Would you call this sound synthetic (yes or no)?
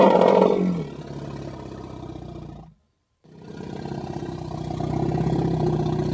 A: yes